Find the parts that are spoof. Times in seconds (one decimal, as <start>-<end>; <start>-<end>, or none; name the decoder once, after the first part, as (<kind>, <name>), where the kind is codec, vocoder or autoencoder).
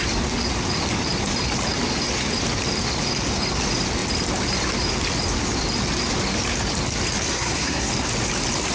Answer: 7.3-7.9 (codec, SNAC)